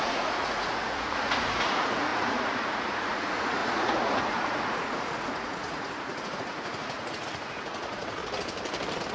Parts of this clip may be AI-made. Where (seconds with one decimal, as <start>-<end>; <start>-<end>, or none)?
0.0-8.2